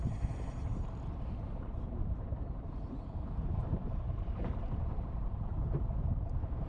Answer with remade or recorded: remade